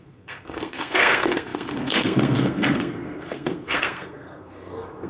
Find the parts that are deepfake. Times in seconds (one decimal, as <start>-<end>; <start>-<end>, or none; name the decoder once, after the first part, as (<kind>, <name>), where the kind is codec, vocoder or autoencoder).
0.0-5.1 (codec, SNAC)